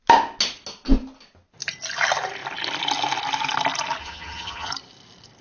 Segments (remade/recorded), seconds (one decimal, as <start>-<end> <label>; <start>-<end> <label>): 0.0-4.0 recorded; 4.0-4.7 remade; 4.7-5.4 recorded